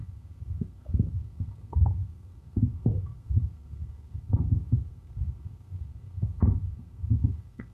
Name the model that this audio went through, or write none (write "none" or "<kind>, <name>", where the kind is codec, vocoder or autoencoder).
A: codec, SNAC